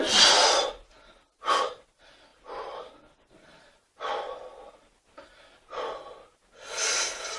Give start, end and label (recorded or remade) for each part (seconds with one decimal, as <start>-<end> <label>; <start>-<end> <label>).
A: 0.0-7.4 recorded